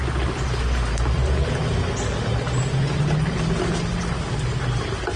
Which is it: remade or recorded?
recorded